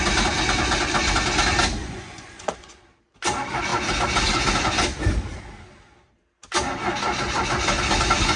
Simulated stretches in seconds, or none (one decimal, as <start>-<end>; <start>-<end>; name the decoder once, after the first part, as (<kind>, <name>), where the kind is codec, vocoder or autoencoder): 1.8-2.8 (vocoder, Vocos)